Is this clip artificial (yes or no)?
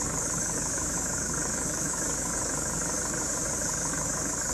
yes